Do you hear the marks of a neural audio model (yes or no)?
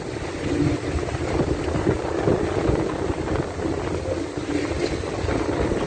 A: no